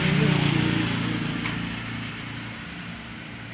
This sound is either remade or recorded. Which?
recorded